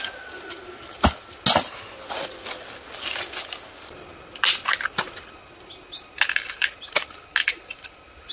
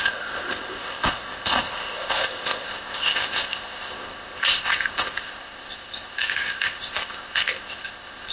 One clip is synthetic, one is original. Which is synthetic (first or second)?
second